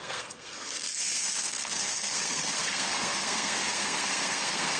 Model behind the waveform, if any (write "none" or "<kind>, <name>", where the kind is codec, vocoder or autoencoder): codec, SNAC